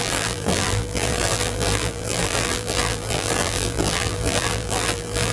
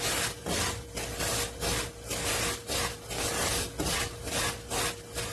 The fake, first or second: first